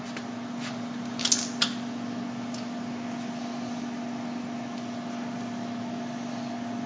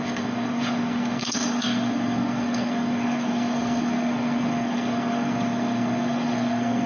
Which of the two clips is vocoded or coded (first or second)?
second